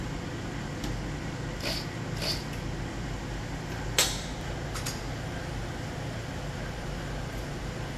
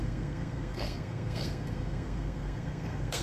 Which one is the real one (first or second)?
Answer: first